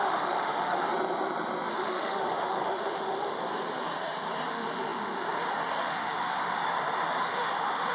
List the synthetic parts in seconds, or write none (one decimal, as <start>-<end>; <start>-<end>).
0.0-0.9; 1.7-3.4; 4.5-6.6; 7.2-7.9